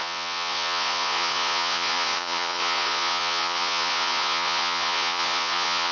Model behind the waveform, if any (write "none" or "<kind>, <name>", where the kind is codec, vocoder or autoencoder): vocoder, Vocos